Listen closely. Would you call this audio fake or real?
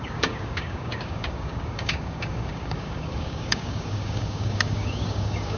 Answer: fake